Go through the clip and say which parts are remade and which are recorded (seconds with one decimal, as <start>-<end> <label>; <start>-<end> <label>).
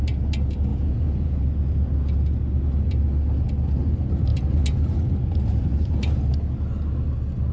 0.0-0.7 recorded; 0.7-1.4 remade; 1.4-7.5 recorded